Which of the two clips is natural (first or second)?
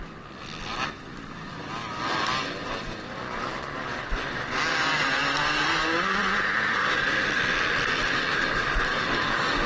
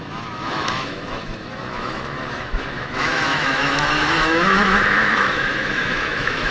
first